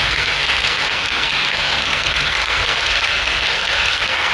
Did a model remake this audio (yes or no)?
yes